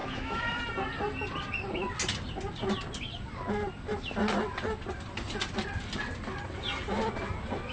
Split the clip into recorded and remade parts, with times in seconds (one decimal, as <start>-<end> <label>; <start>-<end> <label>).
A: 0.0-0.6 remade; 0.6-7.7 recorded